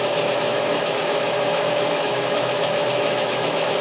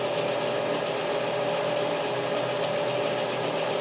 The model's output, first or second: first